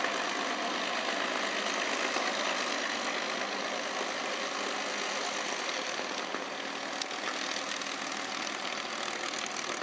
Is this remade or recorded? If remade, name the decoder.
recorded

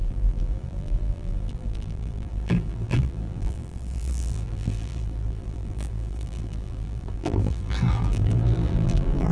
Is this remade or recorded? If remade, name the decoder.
remade, vocoder, BigVGAN v2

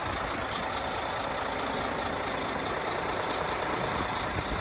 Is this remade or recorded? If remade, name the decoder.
remade, vocoder, BigVGAN v2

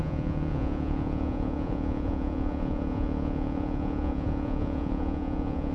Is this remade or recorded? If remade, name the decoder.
remade, vocoder, Vocos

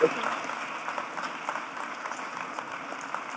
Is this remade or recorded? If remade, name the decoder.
recorded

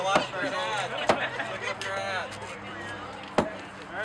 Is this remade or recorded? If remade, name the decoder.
recorded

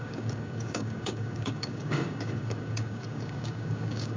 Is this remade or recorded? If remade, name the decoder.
remade, codec, DAC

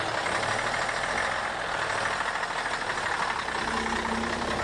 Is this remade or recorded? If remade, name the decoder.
recorded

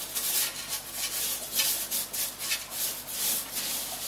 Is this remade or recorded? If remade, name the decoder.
recorded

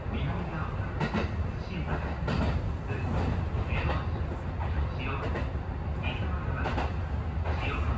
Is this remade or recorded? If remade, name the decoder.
recorded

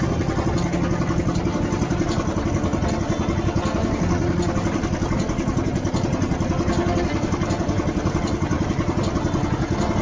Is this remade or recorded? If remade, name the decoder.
recorded